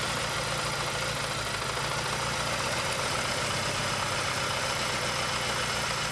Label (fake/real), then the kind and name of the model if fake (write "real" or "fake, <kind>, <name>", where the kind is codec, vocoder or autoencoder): real